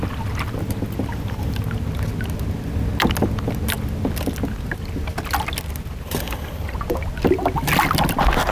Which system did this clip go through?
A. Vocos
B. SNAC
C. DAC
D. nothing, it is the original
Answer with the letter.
D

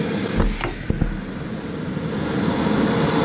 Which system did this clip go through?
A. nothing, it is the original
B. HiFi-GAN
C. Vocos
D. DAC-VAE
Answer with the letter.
A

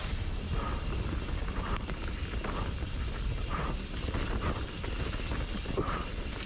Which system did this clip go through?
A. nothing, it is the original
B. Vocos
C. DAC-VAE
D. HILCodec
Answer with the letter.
A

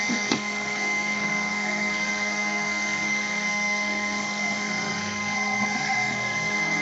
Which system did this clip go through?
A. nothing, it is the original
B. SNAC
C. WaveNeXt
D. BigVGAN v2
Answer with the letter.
B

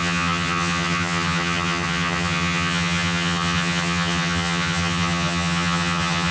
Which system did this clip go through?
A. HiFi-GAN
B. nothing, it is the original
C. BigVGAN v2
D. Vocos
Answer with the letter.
A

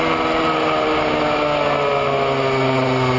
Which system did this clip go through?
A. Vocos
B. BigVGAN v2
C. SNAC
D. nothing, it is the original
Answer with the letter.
D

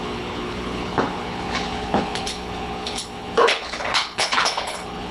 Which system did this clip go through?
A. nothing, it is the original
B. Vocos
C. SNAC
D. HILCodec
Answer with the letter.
D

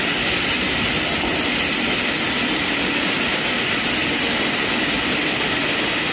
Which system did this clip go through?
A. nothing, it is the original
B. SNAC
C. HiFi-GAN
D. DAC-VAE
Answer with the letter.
A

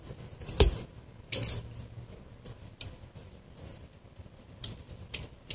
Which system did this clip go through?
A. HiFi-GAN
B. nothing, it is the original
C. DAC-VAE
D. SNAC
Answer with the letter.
B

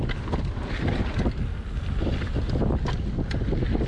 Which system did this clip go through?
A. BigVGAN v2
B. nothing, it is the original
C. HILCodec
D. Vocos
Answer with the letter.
B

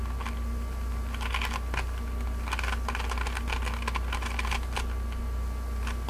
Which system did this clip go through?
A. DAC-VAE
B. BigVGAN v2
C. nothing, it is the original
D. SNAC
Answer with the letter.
C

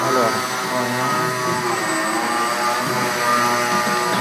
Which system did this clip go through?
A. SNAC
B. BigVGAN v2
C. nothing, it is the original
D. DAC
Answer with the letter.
C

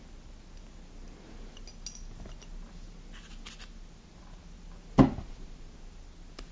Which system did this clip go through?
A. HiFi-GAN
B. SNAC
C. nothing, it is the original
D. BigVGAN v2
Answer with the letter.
C